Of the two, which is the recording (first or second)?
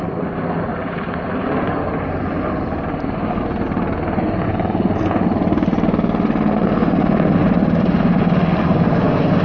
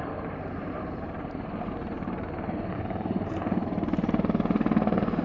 first